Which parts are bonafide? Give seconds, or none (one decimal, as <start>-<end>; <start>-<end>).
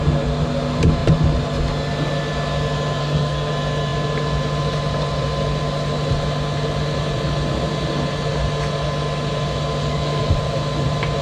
0.0-3.0; 3.5-9.8; 10.3-11.2